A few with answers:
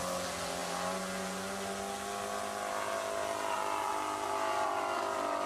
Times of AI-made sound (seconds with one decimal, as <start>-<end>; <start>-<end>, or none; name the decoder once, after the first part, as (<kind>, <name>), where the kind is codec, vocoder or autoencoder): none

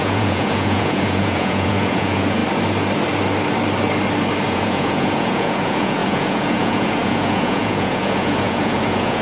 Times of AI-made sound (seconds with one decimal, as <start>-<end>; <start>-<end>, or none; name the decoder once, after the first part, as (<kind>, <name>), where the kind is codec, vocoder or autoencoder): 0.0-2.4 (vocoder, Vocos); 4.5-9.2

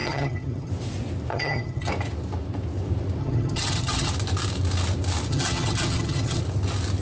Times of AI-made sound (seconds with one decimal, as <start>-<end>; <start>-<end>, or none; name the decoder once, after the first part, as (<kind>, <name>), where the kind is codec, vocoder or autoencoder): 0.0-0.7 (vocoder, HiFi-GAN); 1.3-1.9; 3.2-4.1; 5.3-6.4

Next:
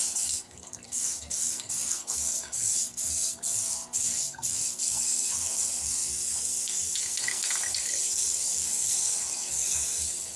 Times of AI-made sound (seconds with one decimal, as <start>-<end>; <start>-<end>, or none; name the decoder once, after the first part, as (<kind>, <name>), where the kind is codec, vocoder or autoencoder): 0.0-10.4 (codec, SNAC)